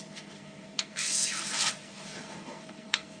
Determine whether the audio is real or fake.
fake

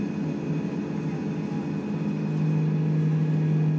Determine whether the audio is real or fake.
real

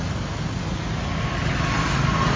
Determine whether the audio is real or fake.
real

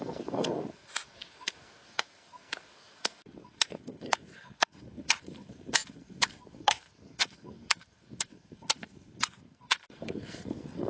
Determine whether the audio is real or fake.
fake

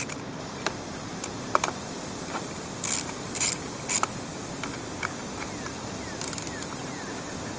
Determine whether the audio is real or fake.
real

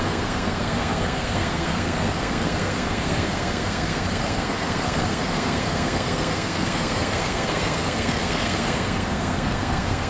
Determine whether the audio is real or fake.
fake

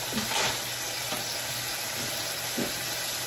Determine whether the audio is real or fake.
real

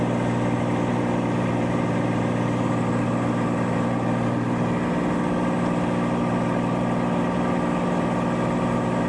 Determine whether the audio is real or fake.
real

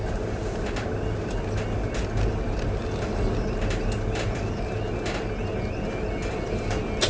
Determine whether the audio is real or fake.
real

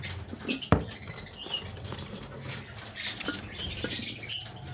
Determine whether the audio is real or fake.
real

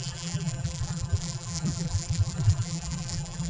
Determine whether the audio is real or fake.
fake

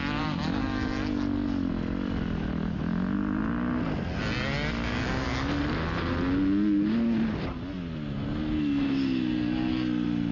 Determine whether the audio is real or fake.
real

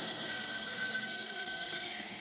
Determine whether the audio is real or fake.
fake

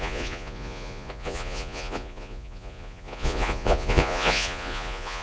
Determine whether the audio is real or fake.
fake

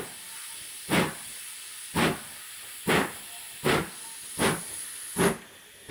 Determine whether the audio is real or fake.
real